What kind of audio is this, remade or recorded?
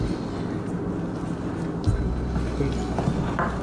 recorded